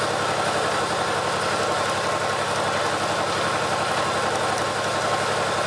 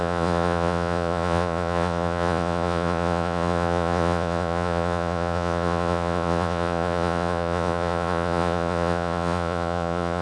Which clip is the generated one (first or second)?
second